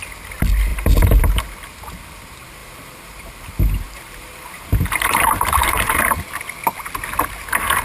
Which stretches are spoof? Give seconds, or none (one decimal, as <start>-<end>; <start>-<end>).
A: 0.7-1.4; 2.6-6.2